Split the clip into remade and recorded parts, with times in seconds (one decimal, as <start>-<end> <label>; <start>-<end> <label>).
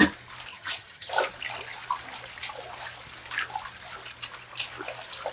0.0-0.5 recorded; 0.5-1.1 remade; 1.1-5.3 recorded